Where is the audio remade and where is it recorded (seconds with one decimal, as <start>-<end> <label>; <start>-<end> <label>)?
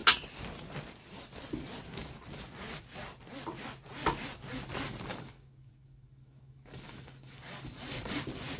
0.0-5.1 recorded; 5.1-8.2 remade; 8.2-8.6 recorded